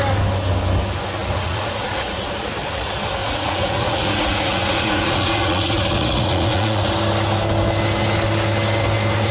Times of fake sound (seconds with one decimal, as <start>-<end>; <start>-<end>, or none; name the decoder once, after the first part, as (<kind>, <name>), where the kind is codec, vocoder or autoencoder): 1.2-2.3 (vocoder, Vocos); 3.2-6.9

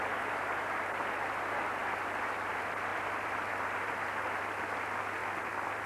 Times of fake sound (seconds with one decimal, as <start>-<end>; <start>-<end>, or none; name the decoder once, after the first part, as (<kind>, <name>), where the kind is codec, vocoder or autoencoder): 2.9-3.5 (vocoder, BigVGAN v2); 5.2-5.9

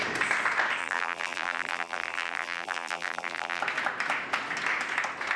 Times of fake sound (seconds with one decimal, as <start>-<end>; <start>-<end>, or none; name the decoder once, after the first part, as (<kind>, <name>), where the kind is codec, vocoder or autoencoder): 0.8-3.6 (vocoder, BigVGAN v2)

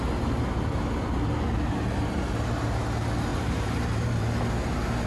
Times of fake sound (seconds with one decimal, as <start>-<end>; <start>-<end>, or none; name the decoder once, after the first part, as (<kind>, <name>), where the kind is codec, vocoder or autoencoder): 3.3-4.2 (vocoder, BigVGAN v2)

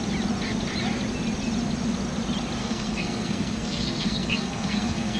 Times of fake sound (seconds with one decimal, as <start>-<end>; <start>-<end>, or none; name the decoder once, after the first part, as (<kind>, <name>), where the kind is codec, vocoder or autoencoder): 2.6-5.2 (codec, SNAC)

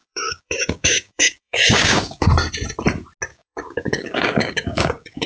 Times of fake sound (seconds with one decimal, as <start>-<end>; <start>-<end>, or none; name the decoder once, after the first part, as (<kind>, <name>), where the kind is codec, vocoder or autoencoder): 0.0-2.3 (codec, DAC); 3.3-5.3

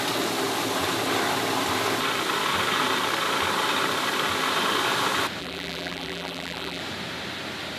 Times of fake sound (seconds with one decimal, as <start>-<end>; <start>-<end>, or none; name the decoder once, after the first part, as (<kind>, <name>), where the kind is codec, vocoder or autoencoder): 5.4-6.8 (vocoder, BigVGAN v2)